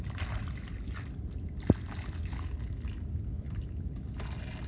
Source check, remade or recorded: recorded